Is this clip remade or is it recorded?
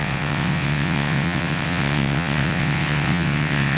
remade